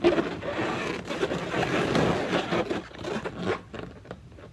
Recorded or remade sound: recorded